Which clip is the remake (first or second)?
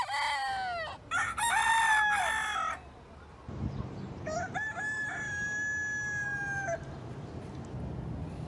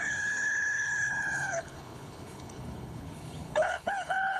second